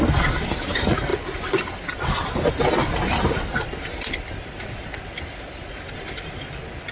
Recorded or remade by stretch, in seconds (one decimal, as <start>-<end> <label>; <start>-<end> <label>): 0.0-6.9 recorded